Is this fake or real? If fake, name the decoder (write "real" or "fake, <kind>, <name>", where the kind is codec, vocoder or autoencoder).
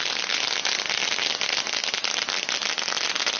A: real